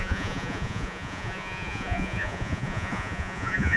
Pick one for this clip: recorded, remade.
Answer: remade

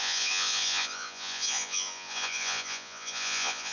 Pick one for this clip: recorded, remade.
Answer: remade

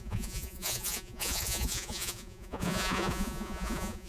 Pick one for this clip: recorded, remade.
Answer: remade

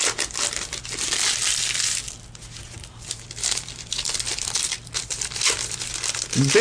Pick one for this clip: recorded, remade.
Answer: recorded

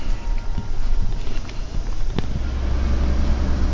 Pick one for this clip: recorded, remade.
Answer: recorded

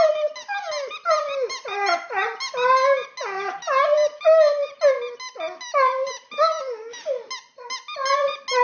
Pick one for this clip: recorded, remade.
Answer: recorded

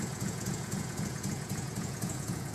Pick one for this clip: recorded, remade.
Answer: remade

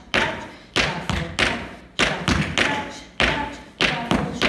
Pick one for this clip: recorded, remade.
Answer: recorded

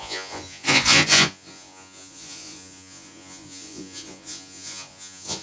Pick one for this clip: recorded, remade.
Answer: remade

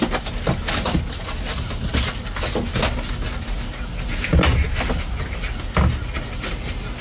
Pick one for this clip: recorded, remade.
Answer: recorded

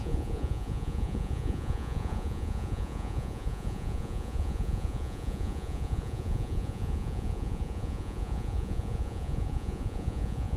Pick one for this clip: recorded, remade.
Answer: remade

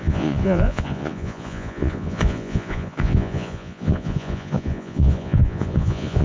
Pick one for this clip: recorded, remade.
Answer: remade